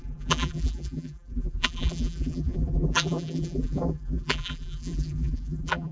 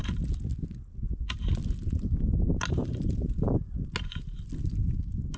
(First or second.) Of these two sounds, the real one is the second